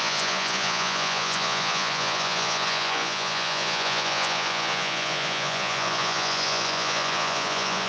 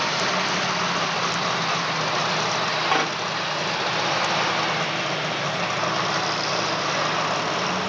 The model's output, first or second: first